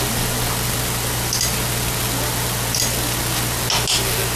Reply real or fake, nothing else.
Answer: real